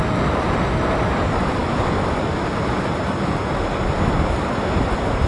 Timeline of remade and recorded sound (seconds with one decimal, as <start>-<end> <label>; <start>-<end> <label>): 0.0-5.3 recorded